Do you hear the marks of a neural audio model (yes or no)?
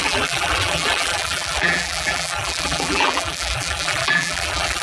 yes